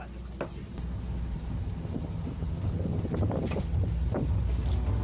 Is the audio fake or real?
real